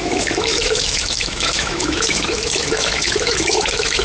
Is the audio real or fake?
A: fake